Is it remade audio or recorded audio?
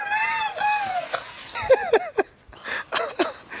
recorded